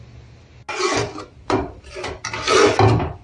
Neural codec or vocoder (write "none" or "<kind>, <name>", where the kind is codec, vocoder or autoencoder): none